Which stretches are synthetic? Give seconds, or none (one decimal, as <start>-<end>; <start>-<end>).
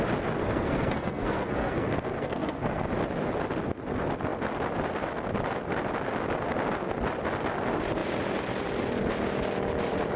0.4-2.9